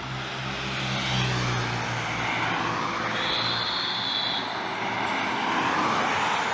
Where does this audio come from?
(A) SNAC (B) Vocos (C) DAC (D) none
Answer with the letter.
D